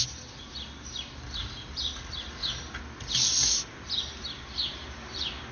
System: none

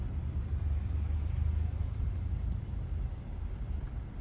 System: vocoder, BigVGAN v2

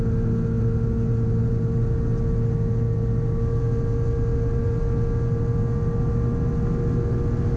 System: none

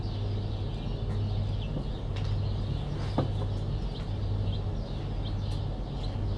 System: none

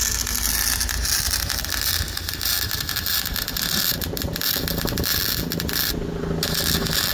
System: none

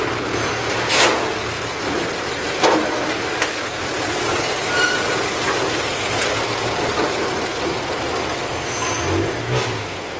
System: none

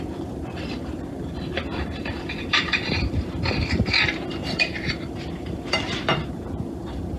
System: vocoder, BigVGAN v2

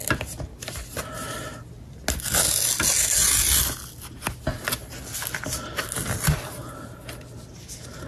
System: none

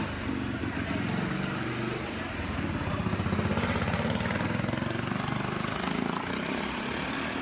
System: none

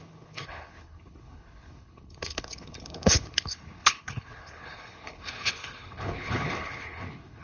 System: codec, HILCodec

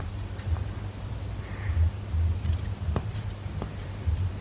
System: none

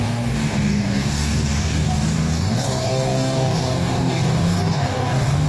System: codec, DAC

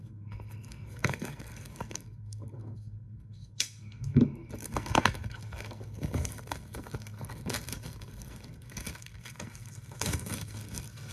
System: codec, SNAC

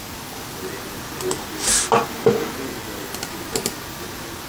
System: none